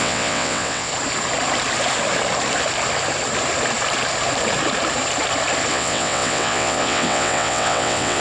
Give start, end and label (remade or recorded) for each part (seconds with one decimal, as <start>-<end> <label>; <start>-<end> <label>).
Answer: 0.0-0.9 remade; 0.9-5.7 recorded; 5.7-8.2 remade